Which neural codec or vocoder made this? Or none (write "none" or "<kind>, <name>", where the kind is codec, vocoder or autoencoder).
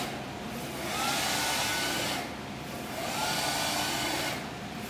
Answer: none